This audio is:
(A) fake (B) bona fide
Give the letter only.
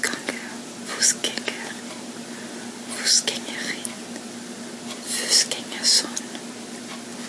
B